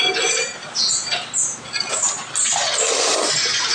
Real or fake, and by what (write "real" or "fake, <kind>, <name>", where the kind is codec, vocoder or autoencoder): real